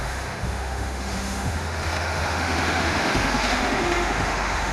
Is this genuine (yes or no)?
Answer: no